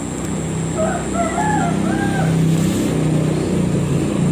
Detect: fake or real real